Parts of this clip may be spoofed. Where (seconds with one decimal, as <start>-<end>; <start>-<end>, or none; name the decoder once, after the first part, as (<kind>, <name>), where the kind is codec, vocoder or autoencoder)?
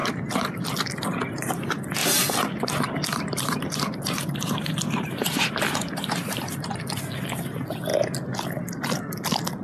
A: 0.0-0.6 (vocoder, BigVGAN v2); 2.0-6.7